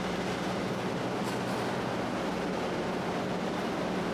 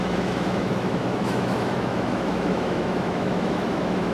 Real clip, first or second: first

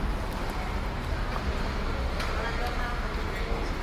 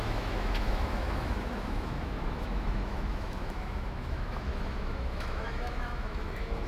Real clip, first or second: first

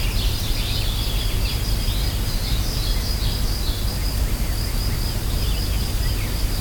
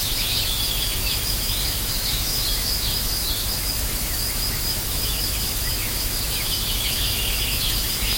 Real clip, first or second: first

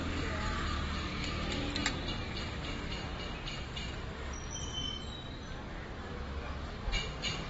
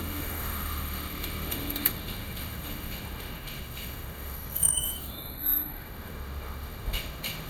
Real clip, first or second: first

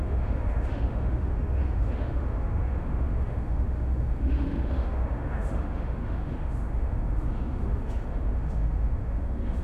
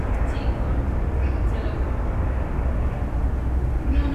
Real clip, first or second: second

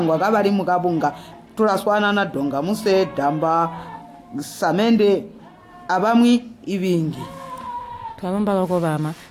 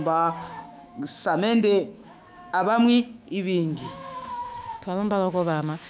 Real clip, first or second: first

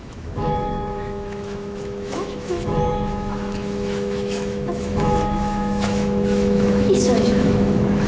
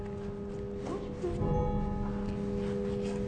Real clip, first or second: second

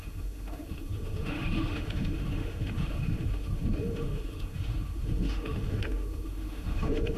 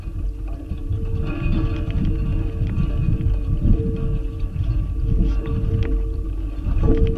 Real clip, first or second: second